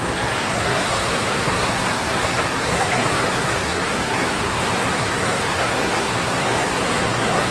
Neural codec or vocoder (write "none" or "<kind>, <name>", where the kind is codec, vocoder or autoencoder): codec, SNAC